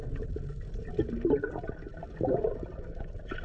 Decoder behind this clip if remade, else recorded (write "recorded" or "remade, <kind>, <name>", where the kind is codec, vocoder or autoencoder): recorded